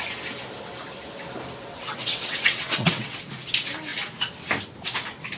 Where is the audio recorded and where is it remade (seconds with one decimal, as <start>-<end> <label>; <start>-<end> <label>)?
0.0-1.6 recorded; 1.6-3.3 remade; 3.3-5.4 recorded